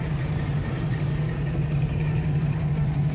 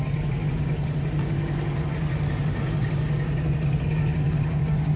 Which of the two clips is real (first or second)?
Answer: second